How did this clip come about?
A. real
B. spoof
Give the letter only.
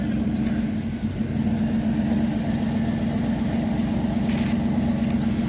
A